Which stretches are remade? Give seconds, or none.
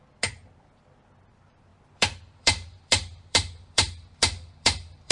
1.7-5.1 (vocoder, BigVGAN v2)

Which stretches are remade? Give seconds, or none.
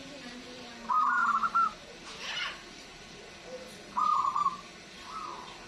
0.0-0.7 (vocoder, BigVGAN v2); 1.2-3.2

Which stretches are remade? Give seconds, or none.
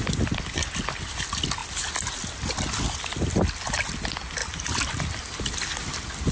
none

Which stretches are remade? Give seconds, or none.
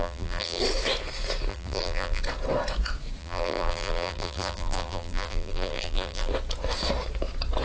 0.0-0.6 (vocoder, BigVGAN v2); 1.5-2.2; 3.2-6.3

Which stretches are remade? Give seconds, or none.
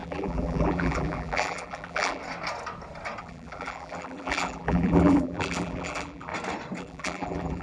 0.0-2.2 (vocoder, BigVGAN v2); 3.2-6.3; 6.8-7.6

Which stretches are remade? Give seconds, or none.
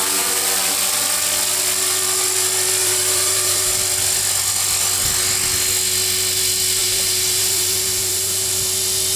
2.8-3.7 (vocoder, BigVGAN v2); 6.8-8.5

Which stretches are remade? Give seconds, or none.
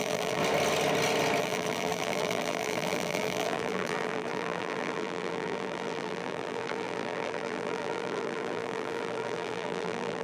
0.0-0.4 (vocoder, BigVGAN v2); 1.4-10.2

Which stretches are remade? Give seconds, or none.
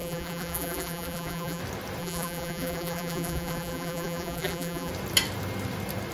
0.0-1.6 (vocoder, BigVGAN v2); 2.0-4.9